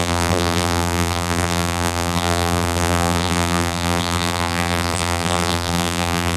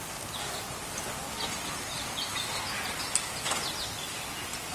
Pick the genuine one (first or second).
second